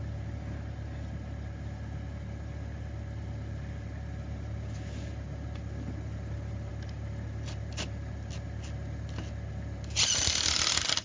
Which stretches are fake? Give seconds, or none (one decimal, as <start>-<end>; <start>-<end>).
none